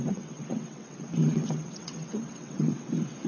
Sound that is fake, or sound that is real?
fake